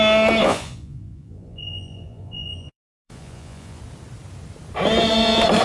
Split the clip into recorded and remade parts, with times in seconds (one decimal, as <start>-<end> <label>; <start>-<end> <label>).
0.0-0.4 recorded; 0.4-3.8 remade; 3.8-5.6 recorded